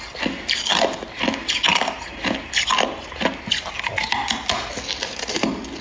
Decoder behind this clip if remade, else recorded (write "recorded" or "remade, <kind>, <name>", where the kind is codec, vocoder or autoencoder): recorded